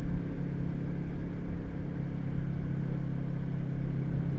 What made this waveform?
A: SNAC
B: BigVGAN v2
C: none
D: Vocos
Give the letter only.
C